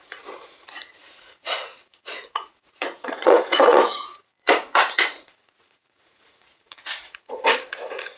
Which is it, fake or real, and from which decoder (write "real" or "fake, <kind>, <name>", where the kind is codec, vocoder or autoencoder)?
fake, vocoder, Vocos